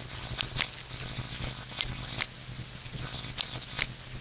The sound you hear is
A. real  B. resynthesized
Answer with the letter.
A